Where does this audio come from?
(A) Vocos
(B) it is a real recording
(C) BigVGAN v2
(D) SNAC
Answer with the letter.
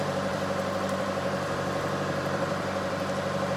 C